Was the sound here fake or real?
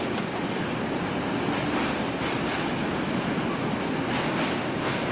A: real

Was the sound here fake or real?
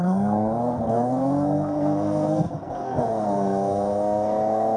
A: fake